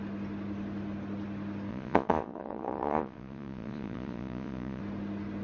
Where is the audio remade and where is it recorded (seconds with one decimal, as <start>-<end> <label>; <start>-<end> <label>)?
0.0-1.7 recorded; 1.7-4.8 remade; 4.8-5.4 recorded